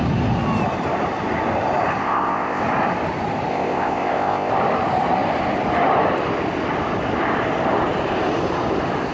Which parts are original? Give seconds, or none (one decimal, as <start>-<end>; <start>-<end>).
0.0-2.0; 2.6-3.5; 4.5-9.1